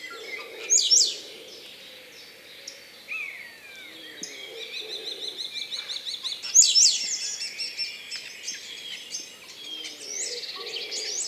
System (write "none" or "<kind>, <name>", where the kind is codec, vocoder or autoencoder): none